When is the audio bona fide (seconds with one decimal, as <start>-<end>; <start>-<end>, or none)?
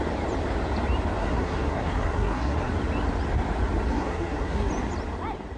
0.0-1.2; 2.7-3.9; 4.7-5.6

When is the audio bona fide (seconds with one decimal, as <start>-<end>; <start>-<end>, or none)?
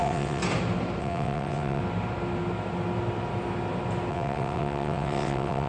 0.4-1.0; 1.8-4.1